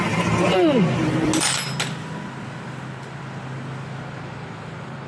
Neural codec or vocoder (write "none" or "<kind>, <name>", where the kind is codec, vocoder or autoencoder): none